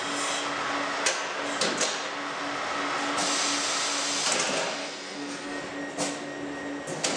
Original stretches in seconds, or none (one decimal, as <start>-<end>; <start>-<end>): 0.0-4.8; 5.6-7.2